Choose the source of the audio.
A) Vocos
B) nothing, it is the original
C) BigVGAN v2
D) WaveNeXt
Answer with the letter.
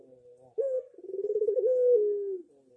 B